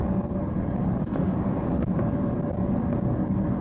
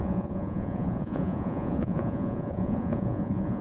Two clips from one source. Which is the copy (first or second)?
second